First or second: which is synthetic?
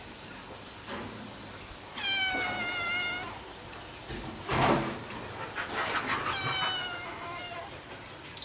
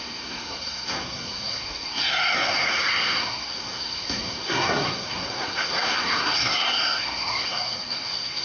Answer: second